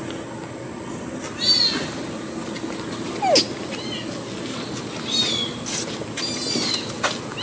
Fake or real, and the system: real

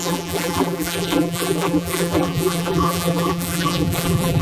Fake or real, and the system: fake, vocoder, BigVGAN v2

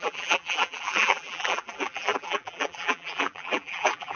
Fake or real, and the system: fake, vocoder, BigVGAN v2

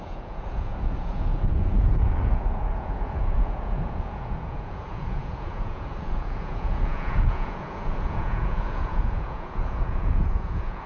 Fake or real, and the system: fake, vocoder, Vocos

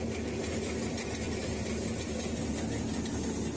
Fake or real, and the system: real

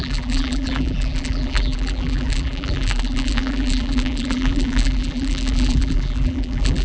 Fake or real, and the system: fake, vocoder, BigVGAN v2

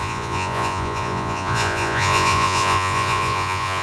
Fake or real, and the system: fake, vocoder, Vocos